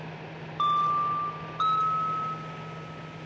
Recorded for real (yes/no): yes